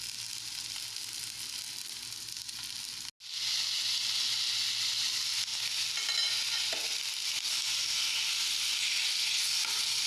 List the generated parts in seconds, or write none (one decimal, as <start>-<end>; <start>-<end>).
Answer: none